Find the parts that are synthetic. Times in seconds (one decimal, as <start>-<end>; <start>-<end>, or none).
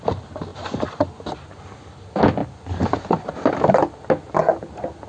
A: none